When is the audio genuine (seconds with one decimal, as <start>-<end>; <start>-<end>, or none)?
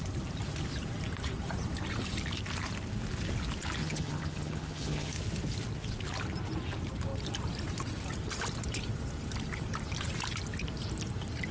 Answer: 0.0-3.8; 5.1-11.5